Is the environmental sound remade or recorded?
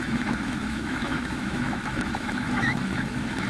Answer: remade